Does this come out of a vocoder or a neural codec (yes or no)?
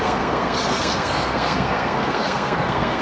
yes